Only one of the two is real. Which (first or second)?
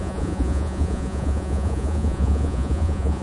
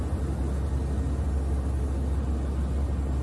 second